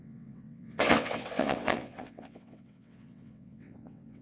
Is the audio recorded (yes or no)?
no